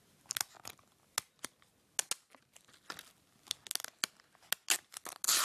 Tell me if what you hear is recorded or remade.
recorded